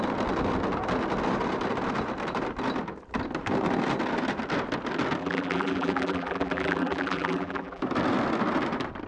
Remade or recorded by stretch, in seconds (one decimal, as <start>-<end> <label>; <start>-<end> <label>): 0.0-5.2 recorded; 5.2-7.8 remade; 7.8-9.1 recorded